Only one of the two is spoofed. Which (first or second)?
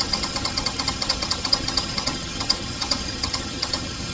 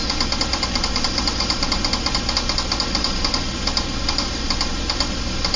first